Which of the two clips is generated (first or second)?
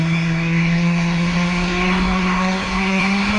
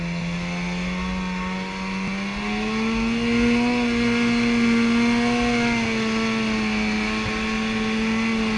first